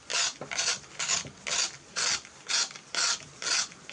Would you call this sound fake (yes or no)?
no